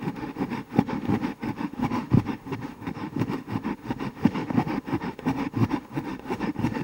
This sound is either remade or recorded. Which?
remade